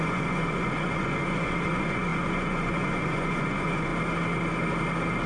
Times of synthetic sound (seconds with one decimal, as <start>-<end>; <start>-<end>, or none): 0.0-3.9